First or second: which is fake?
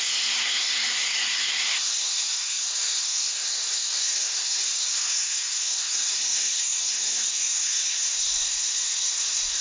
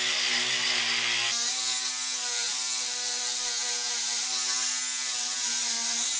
first